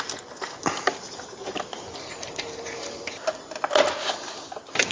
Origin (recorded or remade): recorded